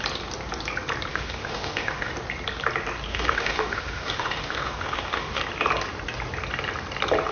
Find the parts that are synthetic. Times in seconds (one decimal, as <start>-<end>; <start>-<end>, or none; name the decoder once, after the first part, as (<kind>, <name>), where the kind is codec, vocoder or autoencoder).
1.1-2.1 (autoencoder, DAC-VAE); 3.1-5.4